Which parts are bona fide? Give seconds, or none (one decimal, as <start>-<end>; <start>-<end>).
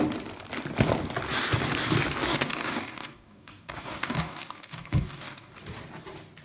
0.0-2.3; 5.5-6.4